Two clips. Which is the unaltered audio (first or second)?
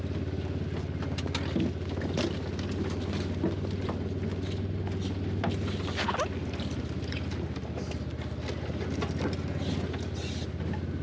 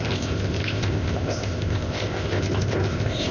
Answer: first